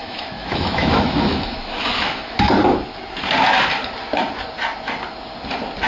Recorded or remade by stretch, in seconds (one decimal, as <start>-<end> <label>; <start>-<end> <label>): 0.0-2.5 remade; 2.5-5.9 recorded